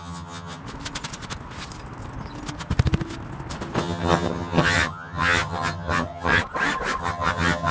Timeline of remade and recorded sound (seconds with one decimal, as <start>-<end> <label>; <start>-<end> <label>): 0.0-0.6 remade; 0.6-3.8 recorded; 3.8-6.4 remade; 6.4-7.0 recorded; 7.0-7.7 remade